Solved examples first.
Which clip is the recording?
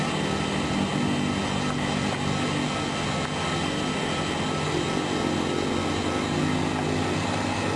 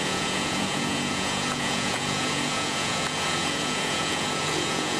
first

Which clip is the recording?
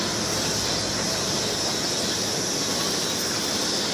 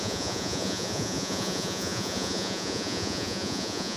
first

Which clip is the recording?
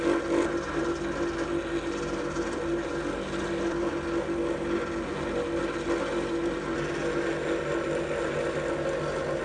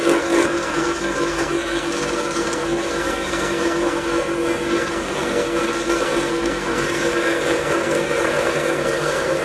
first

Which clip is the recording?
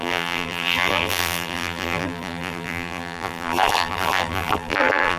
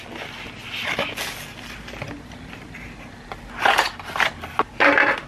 second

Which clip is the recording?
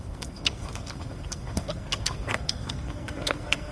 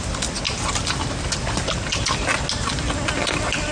second